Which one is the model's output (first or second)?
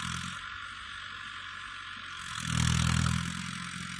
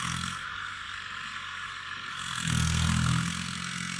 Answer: second